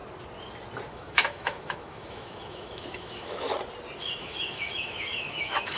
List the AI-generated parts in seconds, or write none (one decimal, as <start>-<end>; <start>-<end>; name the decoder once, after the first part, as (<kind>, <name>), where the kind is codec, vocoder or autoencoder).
0.9-3.5 (autoencoder, DAC-VAE); 4.0-5.8